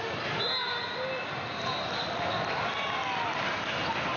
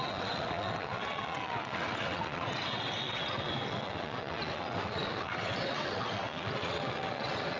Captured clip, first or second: first